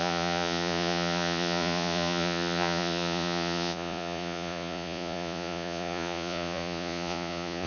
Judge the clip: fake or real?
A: fake